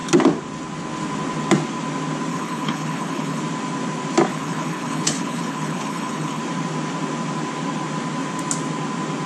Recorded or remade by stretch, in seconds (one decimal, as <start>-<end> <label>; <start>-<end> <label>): 0.0-2.3 recorded; 2.3-3.4 remade; 3.4-4.3 recorded; 4.3-6.4 remade; 6.4-9.3 recorded